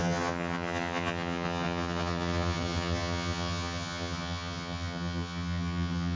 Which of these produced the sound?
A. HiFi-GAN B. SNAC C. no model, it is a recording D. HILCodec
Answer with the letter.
A